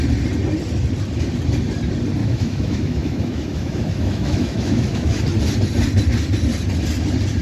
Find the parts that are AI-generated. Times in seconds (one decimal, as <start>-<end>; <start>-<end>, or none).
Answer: 2.2-5.2